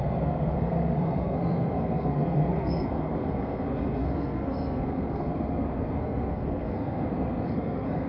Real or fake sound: fake